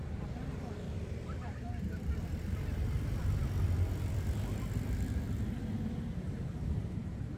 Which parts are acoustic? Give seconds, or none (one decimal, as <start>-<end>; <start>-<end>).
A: 0.0-0.7